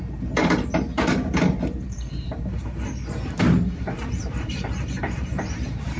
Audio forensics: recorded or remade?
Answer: remade